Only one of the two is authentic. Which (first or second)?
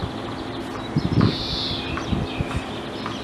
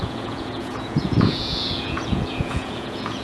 first